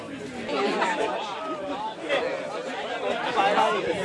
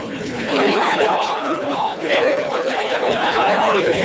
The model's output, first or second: second